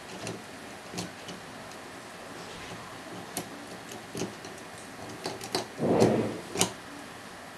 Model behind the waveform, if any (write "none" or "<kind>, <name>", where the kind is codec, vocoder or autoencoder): none